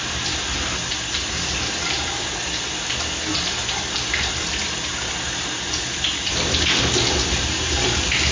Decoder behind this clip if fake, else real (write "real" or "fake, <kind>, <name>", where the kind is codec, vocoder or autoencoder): real